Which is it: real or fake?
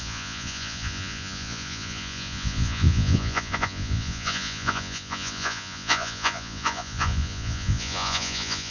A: fake